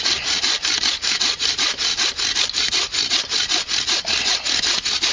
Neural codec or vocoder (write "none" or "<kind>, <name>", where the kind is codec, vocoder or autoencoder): none